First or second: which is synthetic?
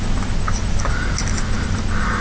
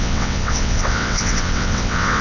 second